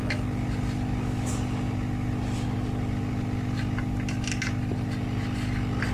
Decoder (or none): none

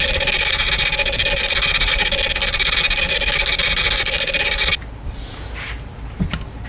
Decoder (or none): none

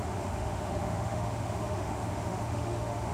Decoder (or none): autoencoder, DAC-VAE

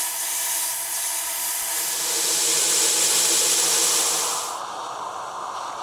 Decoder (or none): none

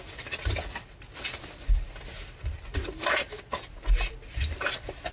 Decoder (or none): none